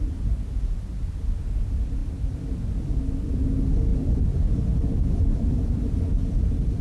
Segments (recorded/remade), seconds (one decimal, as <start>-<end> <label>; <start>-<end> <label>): 0.0-6.8 recorded